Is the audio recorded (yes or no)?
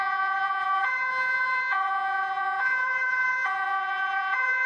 no